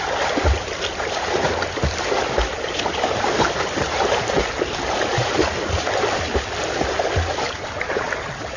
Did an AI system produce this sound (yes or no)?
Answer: yes